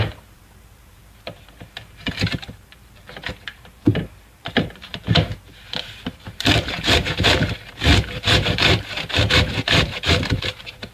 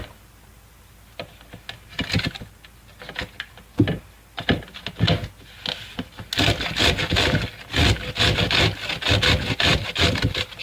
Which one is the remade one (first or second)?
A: first